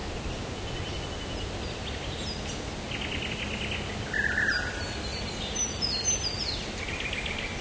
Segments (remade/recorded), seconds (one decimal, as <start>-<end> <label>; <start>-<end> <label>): 0.0-7.6 recorded